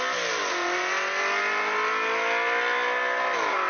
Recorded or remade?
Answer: recorded